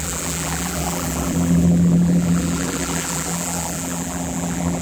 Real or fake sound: fake